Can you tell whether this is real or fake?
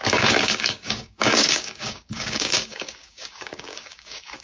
fake